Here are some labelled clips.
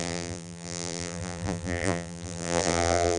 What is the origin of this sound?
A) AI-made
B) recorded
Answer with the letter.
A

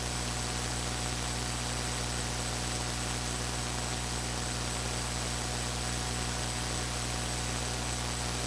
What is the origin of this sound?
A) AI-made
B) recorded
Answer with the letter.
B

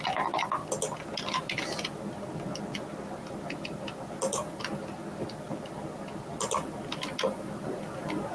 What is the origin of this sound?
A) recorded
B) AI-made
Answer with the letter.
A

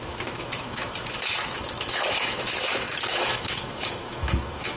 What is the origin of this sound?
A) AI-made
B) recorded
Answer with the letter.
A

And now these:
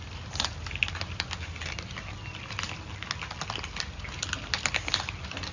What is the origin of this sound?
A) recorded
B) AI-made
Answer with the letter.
A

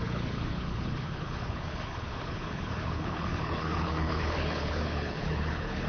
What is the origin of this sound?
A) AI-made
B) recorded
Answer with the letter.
A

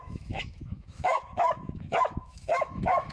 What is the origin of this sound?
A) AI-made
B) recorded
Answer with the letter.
A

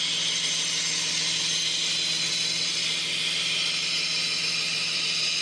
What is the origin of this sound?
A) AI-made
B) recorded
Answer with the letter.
B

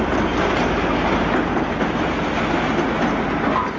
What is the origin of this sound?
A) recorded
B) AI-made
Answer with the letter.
A